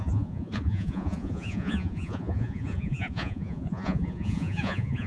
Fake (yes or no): yes